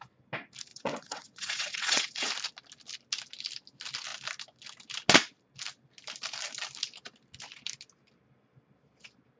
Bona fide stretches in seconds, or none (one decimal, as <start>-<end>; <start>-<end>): 0.0-0.7; 2.3-9.4